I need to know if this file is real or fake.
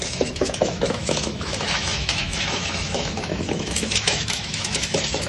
fake